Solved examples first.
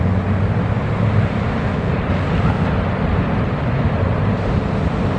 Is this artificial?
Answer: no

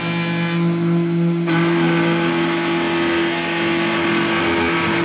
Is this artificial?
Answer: no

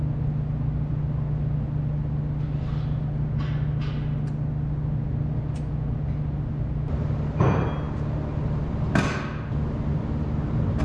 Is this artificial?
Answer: no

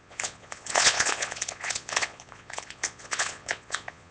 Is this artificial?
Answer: yes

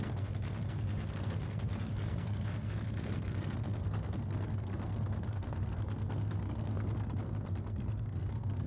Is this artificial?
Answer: yes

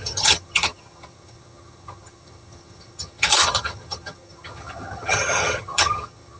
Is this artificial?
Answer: yes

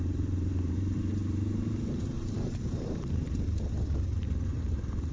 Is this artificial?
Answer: yes